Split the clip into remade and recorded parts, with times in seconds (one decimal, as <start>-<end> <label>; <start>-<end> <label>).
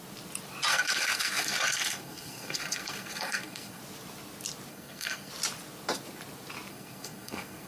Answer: 0.0-0.7 recorded; 0.7-3.8 remade; 3.8-4.7 recorded; 4.7-5.3 remade; 5.3-6.7 recorded; 6.7-7.7 remade